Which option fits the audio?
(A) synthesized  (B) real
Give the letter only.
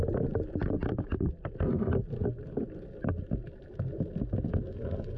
B